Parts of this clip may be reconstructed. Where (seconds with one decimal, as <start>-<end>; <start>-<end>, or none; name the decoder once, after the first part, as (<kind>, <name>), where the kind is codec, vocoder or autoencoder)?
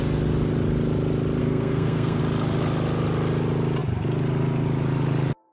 1.4-2.2 (codec, SNAC)